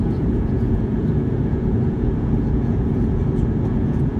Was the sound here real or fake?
fake